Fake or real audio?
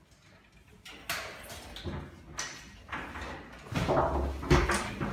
real